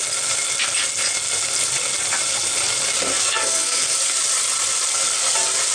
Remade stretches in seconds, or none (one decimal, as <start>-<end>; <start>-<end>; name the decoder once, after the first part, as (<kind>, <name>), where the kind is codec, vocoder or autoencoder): 3.1-3.9 (codec, SNAC)